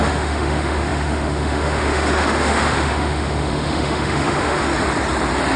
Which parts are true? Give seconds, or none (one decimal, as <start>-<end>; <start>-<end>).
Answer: 4.7-5.6